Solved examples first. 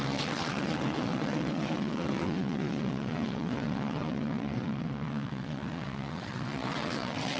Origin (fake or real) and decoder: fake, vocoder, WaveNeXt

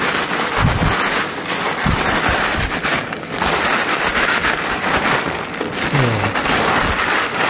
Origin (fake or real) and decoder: real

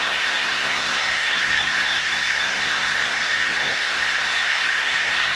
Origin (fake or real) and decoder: fake, codec, SNAC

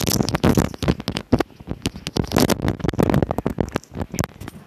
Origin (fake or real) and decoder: real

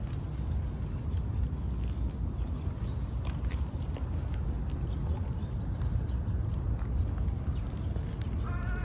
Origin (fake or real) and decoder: real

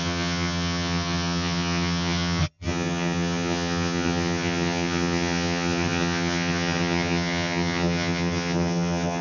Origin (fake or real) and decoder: fake, vocoder, HiFi-GAN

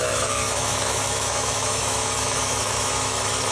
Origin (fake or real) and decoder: fake, autoencoder, DAC-VAE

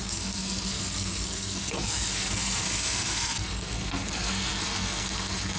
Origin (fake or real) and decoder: fake, codec, SNAC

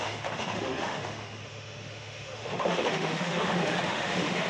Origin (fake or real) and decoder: fake, autoencoder, DAC-VAE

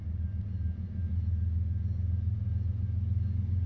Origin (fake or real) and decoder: real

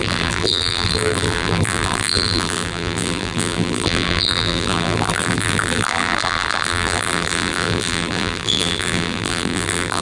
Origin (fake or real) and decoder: fake, vocoder, BigVGAN v2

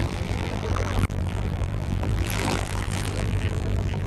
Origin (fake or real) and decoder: fake, vocoder, BigVGAN v2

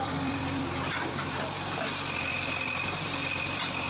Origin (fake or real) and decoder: fake, vocoder, BigVGAN v2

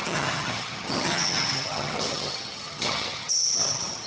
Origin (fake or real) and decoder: fake, vocoder, HiFi-GAN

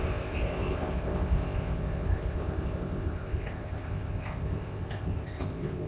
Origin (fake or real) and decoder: fake, codec, ZipCodec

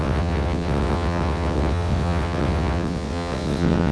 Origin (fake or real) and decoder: fake, vocoder, WaveNeXt